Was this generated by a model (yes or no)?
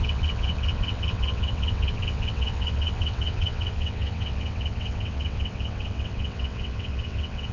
yes